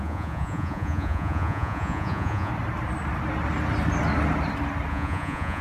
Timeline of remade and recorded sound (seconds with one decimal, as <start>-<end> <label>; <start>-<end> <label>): 0.0-2.5 remade; 2.5-4.9 recorded; 4.9-5.6 remade